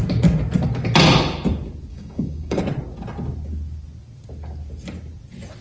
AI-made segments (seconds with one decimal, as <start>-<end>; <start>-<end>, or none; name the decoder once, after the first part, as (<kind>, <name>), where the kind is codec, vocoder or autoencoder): 1.9-2.6 (codec, DAC)